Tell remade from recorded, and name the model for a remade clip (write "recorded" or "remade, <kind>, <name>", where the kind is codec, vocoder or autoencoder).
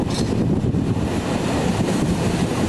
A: remade, vocoder, BigVGAN v2